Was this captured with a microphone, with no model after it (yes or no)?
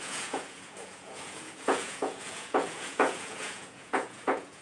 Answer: no